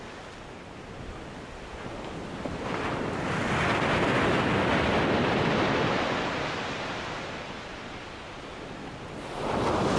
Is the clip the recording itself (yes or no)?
yes